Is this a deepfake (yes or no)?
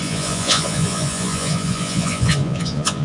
yes